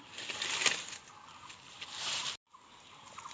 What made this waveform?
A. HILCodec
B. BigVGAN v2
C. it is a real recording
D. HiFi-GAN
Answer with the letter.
C